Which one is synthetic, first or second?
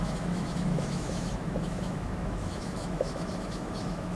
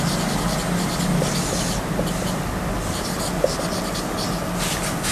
first